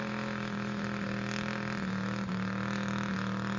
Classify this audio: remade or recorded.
recorded